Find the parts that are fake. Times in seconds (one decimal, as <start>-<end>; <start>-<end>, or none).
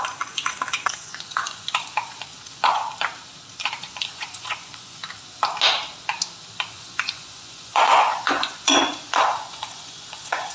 0.0-2.8; 3.8-5.0; 6.7-10.5